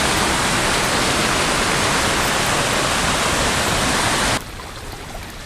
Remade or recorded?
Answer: recorded